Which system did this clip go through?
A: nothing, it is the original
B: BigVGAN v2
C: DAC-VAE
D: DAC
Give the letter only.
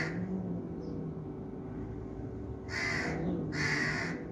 A